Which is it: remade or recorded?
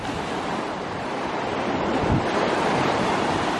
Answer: recorded